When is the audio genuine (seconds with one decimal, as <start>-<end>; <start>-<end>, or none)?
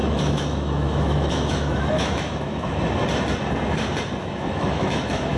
2.8-4.2